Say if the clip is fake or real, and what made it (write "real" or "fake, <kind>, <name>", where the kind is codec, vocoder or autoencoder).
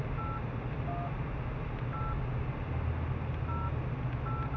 real